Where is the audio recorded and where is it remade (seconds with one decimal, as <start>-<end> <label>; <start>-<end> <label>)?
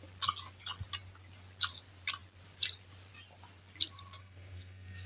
0.0-4.2 recorded; 4.2-5.1 remade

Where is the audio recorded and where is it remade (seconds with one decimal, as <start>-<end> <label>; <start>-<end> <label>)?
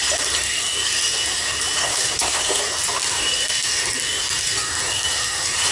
0.0-1.8 recorded; 1.8-2.6 remade; 2.6-5.7 recorded